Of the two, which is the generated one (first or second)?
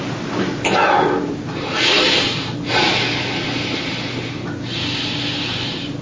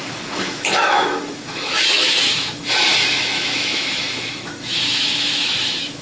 second